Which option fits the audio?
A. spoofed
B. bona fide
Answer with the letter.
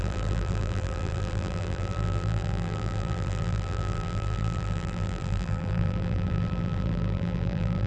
A